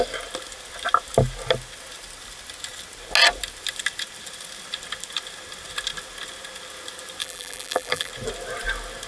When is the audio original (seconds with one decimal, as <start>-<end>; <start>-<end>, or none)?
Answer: 0.0-7.2; 8.1-9.1